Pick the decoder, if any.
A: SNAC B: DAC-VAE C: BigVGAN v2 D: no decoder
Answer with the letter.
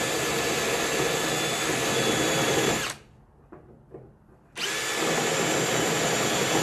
D